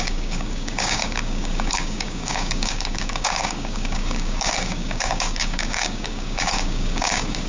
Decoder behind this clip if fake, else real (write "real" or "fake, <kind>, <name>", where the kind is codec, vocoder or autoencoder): fake, codec, DAC